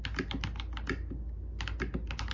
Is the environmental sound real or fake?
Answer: real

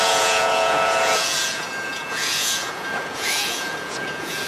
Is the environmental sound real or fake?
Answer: fake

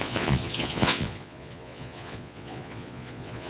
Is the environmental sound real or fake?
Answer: fake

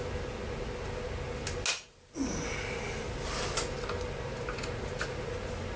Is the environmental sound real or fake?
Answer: real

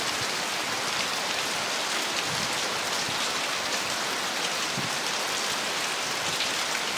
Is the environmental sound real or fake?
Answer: real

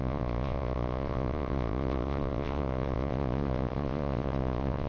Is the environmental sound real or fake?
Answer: fake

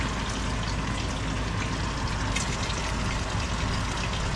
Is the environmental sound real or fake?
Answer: real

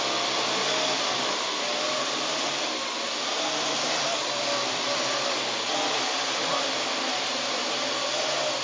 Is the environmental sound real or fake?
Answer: real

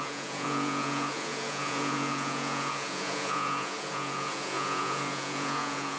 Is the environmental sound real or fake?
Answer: fake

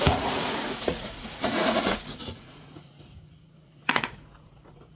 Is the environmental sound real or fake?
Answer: fake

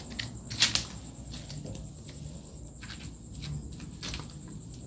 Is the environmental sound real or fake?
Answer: real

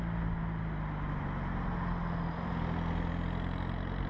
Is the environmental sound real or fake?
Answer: real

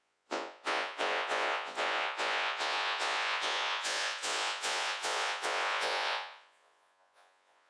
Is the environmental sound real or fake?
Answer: fake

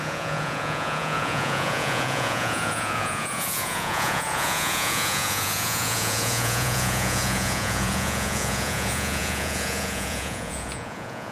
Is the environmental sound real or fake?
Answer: fake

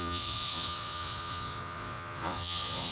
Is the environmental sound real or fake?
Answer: fake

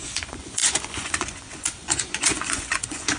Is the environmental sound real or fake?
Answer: fake